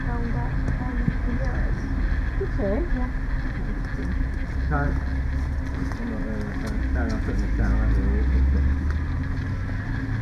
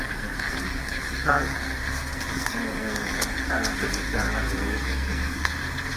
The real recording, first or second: first